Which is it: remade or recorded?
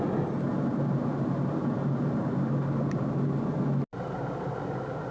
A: recorded